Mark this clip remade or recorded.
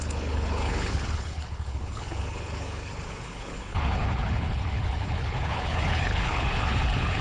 remade